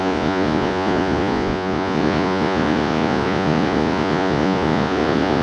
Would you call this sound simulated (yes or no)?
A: yes